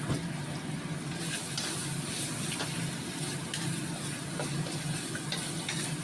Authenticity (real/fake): real